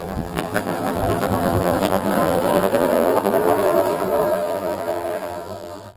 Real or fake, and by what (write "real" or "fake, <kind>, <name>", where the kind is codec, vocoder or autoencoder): fake, vocoder, BigVGAN v2